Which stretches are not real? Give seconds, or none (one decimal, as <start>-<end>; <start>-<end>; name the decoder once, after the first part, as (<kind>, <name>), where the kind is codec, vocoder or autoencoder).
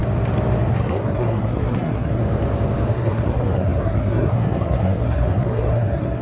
0.7-2.2 (codec, SNAC); 2.9-6.2